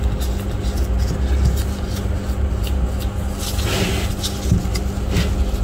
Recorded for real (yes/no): yes